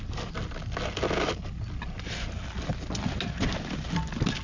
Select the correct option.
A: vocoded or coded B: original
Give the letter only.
B